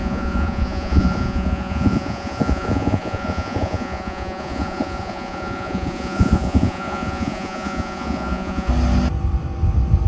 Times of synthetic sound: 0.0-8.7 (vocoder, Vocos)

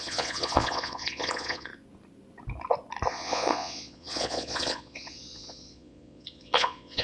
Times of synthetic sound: 0.0-1.7 (vocoder, Vocos); 3.1-7.0

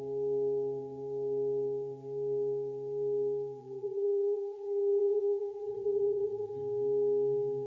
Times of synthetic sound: 3.6-6.5 (vocoder, Vocos)

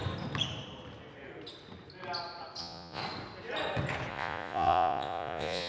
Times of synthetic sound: 2.6-3.0 (vocoder, Vocos); 4.1-5.7